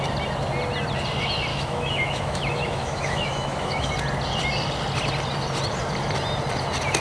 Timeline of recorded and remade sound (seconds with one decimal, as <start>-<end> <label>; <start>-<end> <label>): 0.0-1.5 recorded; 1.5-3.9 remade; 3.9-7.0 recorded